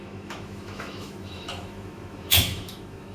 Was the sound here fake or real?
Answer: fake